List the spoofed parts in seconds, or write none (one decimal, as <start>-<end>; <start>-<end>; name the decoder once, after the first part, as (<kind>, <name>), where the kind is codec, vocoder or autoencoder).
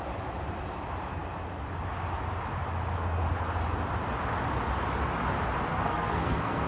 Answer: 5.7-6.7 (codec, SNAC)